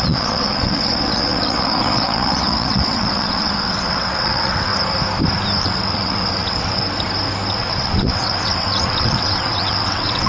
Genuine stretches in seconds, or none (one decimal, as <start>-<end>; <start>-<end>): 4.7-5.6; 6.8-7.5